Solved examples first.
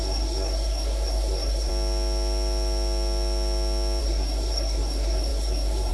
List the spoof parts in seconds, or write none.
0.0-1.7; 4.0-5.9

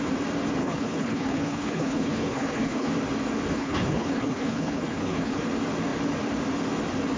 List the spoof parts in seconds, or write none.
0.6-2.9; 3.5-5.4

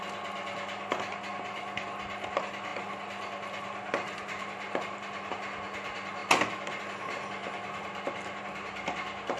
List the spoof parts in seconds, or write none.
none